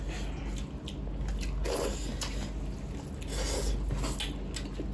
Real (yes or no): yes